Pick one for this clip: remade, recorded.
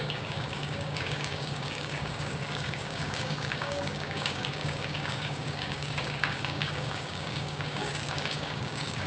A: remade